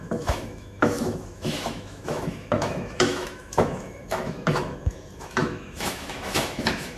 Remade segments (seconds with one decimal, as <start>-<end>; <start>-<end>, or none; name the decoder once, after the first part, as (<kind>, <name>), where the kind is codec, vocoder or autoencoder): 0.0-7.0 (autoencoder, DAC-VAE)